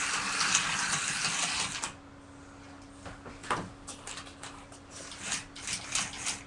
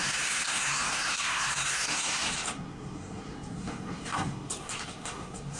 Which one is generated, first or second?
second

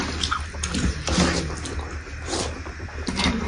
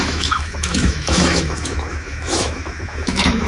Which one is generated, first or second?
second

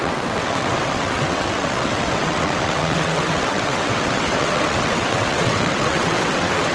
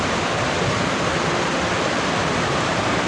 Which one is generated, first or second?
first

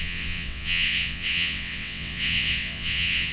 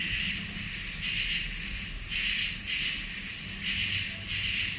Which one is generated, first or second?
first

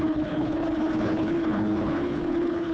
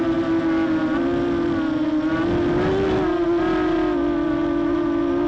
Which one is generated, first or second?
first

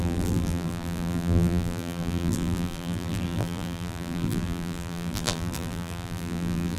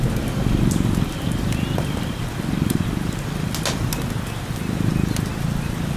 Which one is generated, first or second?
first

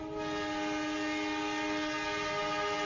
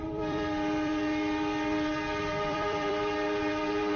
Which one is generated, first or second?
second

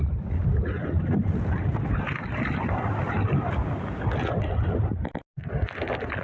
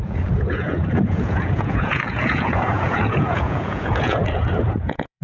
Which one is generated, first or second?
second